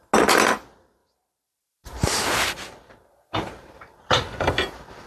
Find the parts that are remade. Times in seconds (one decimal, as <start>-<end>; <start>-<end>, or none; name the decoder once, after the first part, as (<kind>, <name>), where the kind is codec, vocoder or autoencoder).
1.0-4.1 (vocoder, BigVGAN v2)